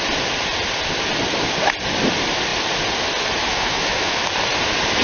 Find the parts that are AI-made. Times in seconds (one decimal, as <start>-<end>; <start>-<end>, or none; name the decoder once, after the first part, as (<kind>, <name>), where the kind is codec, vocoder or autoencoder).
3.5-4.2 (autoencoder, DAC-VAE)